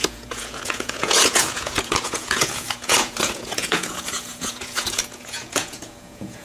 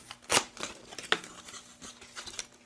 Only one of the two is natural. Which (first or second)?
second